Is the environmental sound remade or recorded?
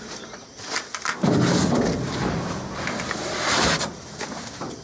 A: recorded